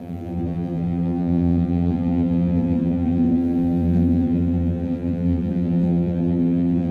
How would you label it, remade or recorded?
remade